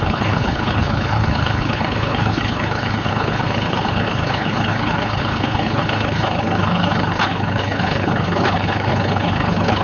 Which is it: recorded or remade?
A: remade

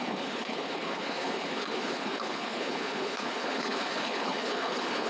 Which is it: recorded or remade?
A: remade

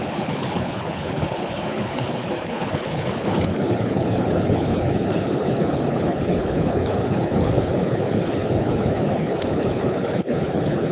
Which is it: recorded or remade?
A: remade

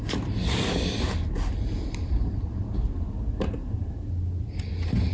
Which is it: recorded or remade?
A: recorded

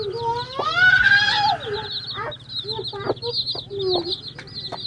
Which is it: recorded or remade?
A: recorded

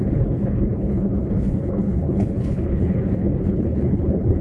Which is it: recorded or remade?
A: remade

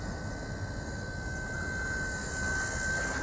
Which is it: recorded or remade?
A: recorded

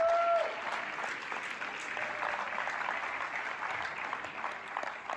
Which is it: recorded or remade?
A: recorded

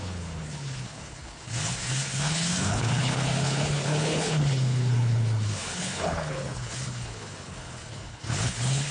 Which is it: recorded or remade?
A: remade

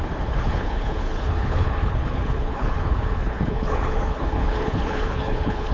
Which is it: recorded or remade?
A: remade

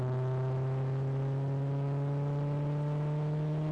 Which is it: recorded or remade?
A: recorded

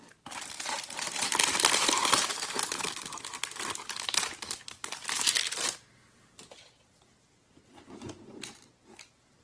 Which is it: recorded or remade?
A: recorded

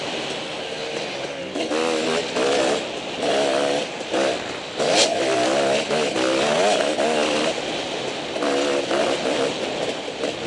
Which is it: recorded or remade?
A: recorded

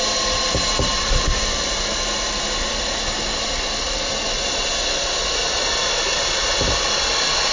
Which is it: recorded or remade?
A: recorded